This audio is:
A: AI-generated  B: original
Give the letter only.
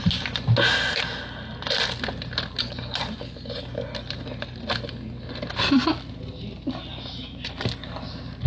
B